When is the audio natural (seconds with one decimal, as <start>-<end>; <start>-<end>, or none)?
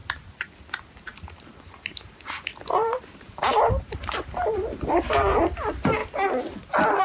0.0-2.7; 6.0-7.0